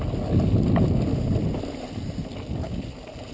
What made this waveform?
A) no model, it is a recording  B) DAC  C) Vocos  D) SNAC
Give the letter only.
A